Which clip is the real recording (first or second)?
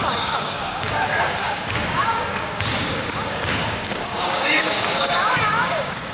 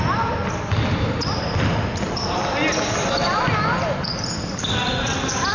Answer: second